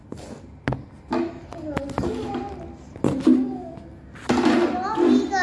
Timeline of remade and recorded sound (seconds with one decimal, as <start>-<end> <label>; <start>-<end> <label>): 0.0-5.4 recorded

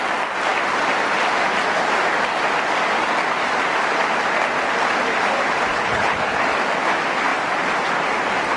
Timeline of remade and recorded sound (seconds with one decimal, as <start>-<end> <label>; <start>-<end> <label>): 0.0-5.7 recorded; 5.7-6.5 remade; 6.5-8.6 recorded

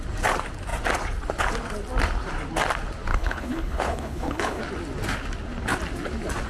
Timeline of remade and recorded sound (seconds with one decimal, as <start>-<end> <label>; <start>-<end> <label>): 0.0-3.1 recorded; 3.1-4.6 remade; 4.6-6.5 recorded

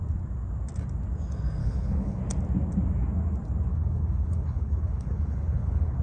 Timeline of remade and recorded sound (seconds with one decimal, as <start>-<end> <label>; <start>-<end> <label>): 0.0-1.6 recorded; 1.6-2.2 remade; 2.2-3.7 recorded; 3.7-6.0 remade

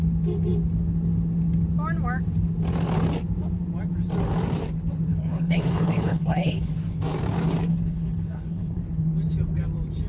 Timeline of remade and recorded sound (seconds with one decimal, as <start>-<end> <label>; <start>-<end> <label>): 0.0-5.1 recorded; 5.1-6.7 remade; 6.7-7.7 recorded; 7.7-8.8 remade; 8.8-10.1 recorded

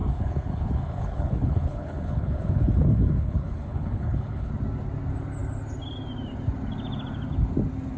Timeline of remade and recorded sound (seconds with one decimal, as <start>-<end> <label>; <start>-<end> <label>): 0.0-4.5 remade; 4.5-8.0 recorded